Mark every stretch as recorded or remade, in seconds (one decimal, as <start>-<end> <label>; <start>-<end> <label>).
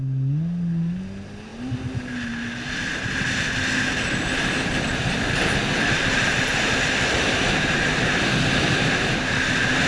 0.0-9.9 recorded